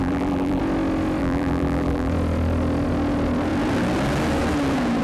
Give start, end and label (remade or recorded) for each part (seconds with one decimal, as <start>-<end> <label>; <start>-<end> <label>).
0.0-0.6 remade; 0.6-1.2 recorded; 1.2-2.1 remade; 2.1-5.0 recorded